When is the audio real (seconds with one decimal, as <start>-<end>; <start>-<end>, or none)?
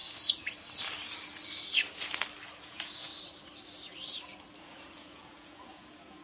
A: 0.0-2.6; 3.1-4.6